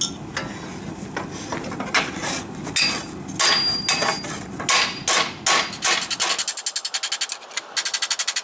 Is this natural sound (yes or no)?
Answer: yes